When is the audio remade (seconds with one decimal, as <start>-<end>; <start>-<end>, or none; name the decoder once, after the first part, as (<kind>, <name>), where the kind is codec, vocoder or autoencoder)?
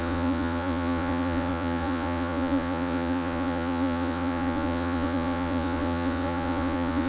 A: 0.0-7.1 (vocoder, Vocos)